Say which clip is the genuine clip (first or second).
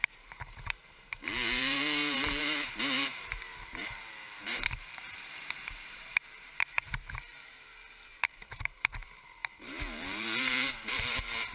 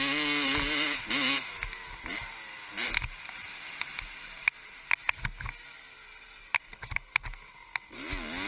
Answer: second